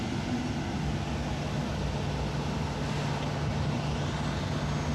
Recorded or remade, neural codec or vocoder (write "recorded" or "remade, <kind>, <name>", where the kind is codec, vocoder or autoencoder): recorded